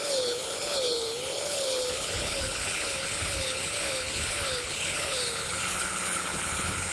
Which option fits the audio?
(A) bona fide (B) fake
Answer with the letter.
B